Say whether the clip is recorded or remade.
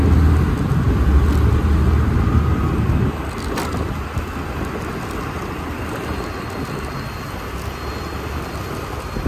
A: recorded